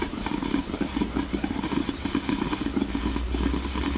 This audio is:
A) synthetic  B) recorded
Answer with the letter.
B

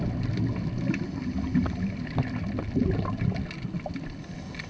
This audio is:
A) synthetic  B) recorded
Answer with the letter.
B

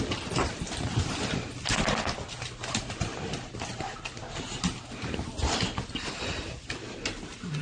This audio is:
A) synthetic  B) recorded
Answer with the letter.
B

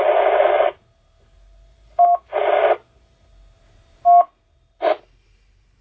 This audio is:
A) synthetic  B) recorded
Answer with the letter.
B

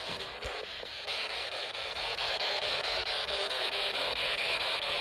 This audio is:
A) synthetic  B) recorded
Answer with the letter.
A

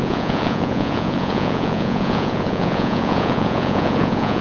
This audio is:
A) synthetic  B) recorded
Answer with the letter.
A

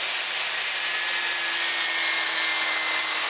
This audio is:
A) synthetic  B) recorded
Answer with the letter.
B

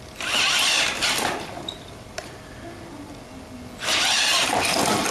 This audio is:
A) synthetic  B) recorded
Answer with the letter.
B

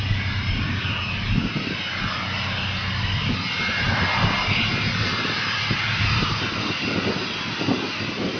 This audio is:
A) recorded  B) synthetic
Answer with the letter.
A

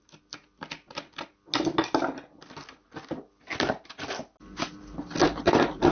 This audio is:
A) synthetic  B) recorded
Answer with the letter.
B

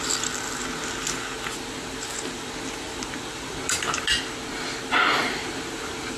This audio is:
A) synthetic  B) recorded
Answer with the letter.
B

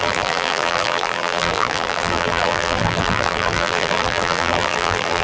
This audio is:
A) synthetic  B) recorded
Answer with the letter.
A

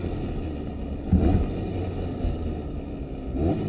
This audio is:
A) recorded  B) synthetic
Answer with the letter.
A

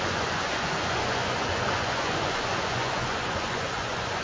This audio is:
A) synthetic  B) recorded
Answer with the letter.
A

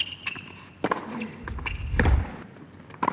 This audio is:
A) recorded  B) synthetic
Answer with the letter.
A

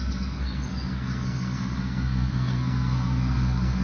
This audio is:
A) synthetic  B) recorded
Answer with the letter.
A